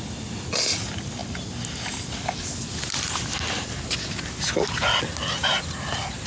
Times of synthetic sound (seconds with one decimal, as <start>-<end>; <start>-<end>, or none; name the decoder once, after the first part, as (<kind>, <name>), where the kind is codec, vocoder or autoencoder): none

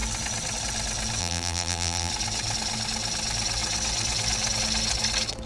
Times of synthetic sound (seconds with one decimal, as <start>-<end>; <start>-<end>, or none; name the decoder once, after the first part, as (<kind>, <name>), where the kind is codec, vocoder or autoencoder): 1.2-2.1 (vocoder, BigVGAN v2)

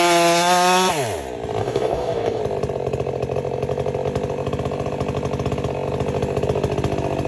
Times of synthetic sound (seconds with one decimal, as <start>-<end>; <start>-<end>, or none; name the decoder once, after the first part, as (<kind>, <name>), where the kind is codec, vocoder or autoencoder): 1.6-2.4 (codec, DAC)

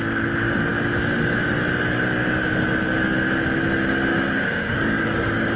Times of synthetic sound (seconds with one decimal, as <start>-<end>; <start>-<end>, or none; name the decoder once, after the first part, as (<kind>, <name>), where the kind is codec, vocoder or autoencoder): 4.1-5.6 (codec, DAC)

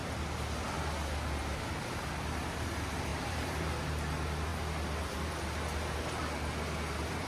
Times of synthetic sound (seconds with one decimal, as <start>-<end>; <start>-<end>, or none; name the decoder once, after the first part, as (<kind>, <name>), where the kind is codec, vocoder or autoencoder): 3.1-3.9 (vocoder, BigVGAN v2)

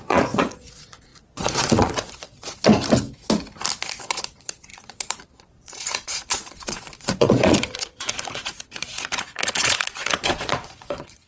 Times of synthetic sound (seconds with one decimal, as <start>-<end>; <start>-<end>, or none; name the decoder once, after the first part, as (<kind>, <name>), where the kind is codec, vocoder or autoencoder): 0.0-2.7 (vocoder, Vocos); 4.0-11.3